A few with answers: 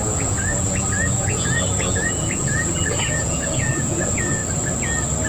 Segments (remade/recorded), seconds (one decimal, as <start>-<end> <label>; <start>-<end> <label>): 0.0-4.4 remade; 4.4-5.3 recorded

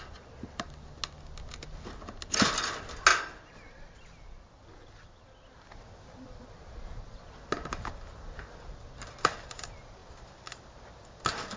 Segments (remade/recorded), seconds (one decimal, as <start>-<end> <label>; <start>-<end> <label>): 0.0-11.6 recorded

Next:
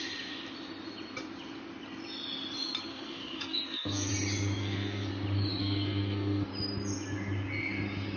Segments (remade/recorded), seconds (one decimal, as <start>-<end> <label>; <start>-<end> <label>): 0.0-2.9 recorded; 2.9-4.1 remade; 4.1-4.6 recorded; 4.6-5.1 remade; 5.1-5.6 recorded; 5.6-6.5 remade; 6.5-8.2 recorded

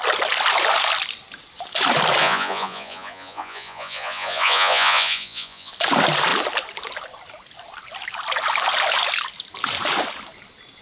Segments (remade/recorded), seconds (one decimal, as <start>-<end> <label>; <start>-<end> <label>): 0.0-2.2 recorded; 2.2-5.7 remade; 5.7-10.8 recorded

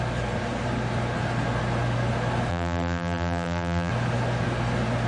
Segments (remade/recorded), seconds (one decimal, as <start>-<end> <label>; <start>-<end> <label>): 0.0-2.5 recorded; 2.5-3.9 remade; 3.9-5.1 recorded

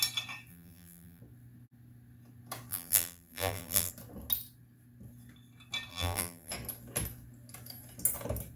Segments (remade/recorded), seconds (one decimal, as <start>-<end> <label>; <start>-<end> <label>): 0.0-0.5 recorded; 0.5-1.2 remade; 1.2-2.7 recorded; 2.7-3.9 remade; 3.9-5.9 recorded; 5.9-6.5 remade; 6.5-8.6 recorded

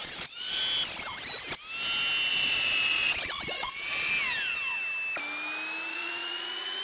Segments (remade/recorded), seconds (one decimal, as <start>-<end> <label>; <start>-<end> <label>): 0.0-0.6 remade; 0.6-2.3 recorded; 2.3-4.1 remade; 4.1-5.9 recorded; 5.9-6.8 remade

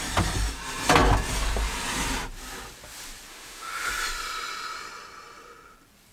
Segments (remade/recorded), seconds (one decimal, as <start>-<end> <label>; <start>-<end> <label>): 0.0-3.3 recorded; 3.3-3.9 remade; 3.9-6.1 recorded